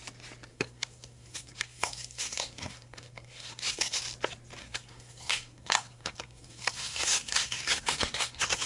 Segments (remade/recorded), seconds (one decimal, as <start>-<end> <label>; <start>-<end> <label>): 0.0-0.5 recorded; 0.5-4.0 remade; 4.0-4.6 recorded; 4.6-8.7 remade